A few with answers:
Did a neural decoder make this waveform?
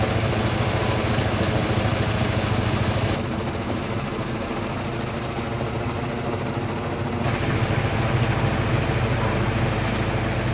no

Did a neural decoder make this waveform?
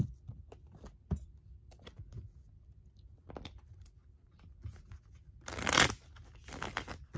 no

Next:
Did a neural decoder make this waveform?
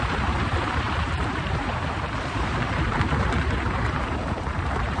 yes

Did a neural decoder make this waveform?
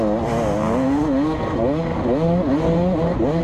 no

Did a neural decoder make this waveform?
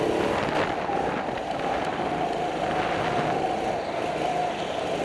no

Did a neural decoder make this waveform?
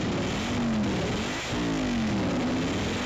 no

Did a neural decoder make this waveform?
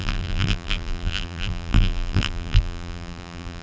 yes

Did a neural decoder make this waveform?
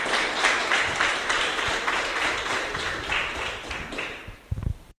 yes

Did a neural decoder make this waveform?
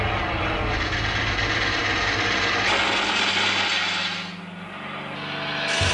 no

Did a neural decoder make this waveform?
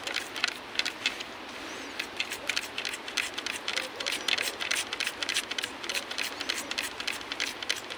no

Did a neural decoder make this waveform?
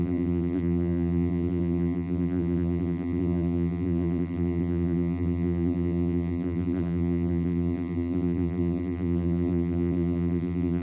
yes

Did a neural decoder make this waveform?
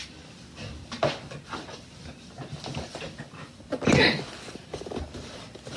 no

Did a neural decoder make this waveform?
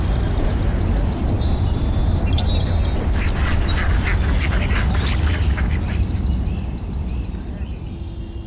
no